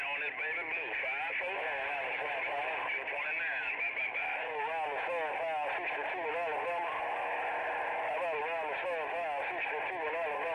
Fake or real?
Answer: real